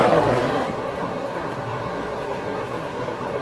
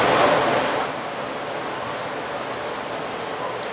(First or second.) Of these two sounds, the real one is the second